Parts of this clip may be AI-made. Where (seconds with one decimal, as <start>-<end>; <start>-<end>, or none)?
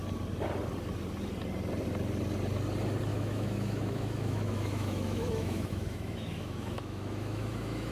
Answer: 3.1-7.9